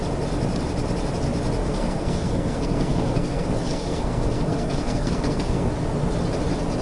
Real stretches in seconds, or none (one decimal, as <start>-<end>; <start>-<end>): 0.0-1.6; 5.7-6.8